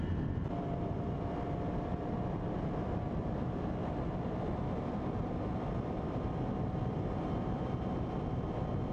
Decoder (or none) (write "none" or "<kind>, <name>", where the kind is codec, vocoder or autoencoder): vocoder, BigVGAN v2